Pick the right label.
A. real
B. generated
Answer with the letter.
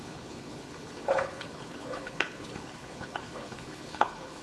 B